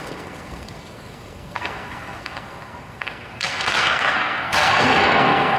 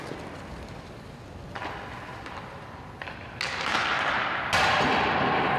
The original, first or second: second